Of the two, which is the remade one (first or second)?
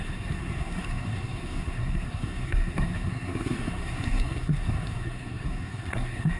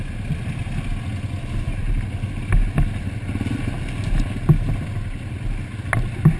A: first